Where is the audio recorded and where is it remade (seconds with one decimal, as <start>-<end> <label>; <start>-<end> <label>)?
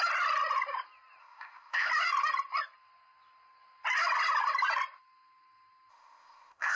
0.0-1.2 recorded; 1.2-1.9 remade; 1.9-5.9 recorded; 5.9-6.8 remade